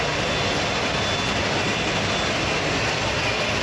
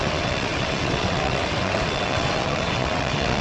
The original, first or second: first